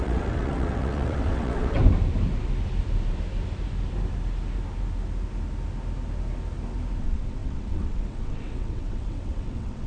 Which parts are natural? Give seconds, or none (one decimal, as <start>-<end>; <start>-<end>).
1.8-7.0